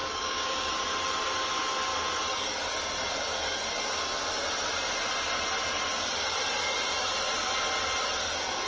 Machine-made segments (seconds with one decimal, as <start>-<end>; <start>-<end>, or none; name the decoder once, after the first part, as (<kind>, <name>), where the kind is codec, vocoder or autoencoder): 0.0-0.7 (codec, DAC)